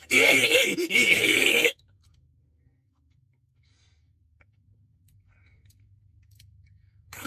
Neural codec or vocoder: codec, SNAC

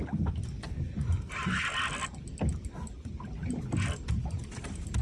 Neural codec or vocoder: none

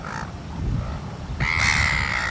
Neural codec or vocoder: none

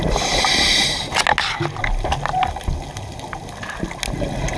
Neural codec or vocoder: none